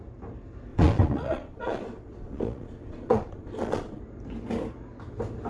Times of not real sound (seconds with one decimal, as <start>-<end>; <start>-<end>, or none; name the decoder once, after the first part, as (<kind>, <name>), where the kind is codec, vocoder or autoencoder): 0.7-4.0 (vocoder, Vocos)